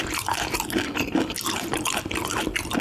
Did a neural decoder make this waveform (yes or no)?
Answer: yes